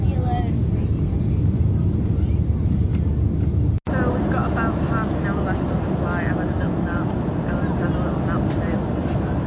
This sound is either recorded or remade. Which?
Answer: recorded